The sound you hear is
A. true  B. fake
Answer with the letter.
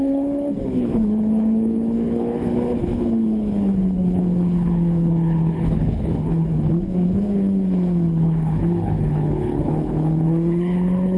B